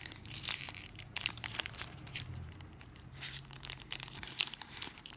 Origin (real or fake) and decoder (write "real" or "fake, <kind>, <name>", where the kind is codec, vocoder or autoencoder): fake, vocoder, BigVGAN v2